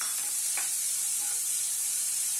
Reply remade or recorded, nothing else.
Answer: remade